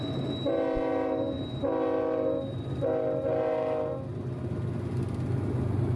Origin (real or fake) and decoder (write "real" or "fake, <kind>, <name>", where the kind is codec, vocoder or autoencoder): real